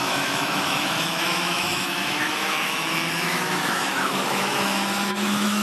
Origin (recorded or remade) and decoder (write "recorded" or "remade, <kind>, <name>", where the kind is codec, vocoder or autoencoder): remade, autoencoder, DAC-VAE